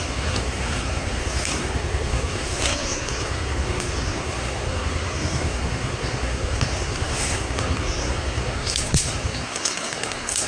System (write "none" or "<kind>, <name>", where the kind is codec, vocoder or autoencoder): codec, SNAC